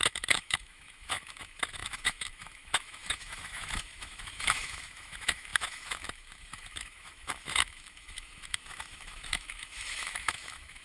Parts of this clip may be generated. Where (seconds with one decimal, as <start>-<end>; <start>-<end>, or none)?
0.0-10.8